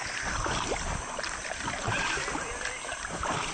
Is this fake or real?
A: real